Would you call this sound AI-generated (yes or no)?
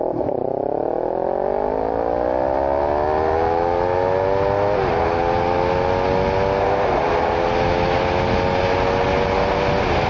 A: no